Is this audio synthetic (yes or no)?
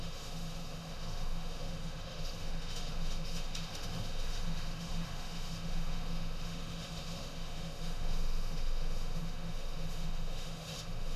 yes